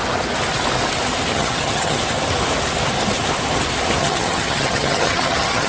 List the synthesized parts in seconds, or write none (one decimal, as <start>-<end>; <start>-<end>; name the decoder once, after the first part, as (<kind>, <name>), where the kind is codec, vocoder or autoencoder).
1.3-2.0 (vocoder, HiFi-GAN); 4.0-5.7

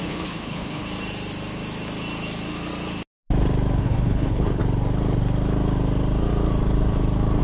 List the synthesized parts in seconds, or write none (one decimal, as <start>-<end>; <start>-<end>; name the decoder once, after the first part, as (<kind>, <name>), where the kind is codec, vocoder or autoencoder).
0.0-0.8 (codec, HILCodec); 3.8-4.6

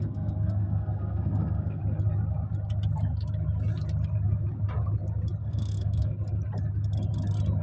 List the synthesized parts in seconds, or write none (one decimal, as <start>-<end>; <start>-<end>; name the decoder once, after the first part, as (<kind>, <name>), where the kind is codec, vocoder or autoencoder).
0.0-1.8 (codec, SNAC); 5.4-6.1

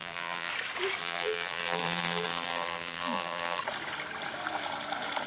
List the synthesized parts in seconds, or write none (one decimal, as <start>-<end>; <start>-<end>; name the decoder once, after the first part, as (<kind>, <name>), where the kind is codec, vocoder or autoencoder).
0.0-0.5 (vocoder, BigVGAN v2); 1.0-3.6

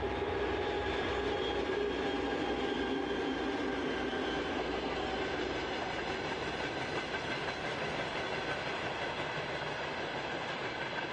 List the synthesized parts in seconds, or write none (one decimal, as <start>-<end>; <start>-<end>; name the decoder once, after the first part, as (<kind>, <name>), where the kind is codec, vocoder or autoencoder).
4.5-5.1 (codec, SNAC)

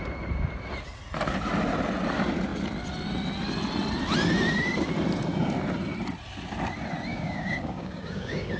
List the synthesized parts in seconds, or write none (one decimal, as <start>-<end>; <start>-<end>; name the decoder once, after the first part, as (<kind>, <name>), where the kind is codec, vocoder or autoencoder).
7.1-8.6 (codec, DAC)

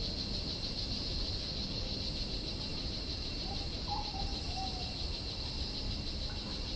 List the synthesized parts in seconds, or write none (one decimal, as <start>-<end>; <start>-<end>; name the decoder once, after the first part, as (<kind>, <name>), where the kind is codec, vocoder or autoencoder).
2.7-4.2 (vocoder, BigVGAN v2)

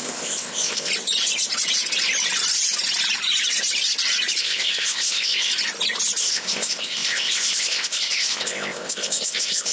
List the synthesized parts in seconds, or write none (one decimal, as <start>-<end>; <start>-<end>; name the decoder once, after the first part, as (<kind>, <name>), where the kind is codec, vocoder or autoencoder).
0.0-0.9 (codec, ZipCodec); 4.4-5.5; 6.2-9.7